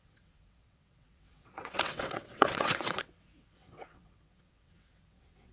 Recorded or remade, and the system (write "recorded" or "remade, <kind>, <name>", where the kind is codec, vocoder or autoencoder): remade, vocoder, WaveNeXt